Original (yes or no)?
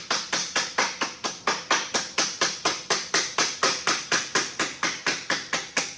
yes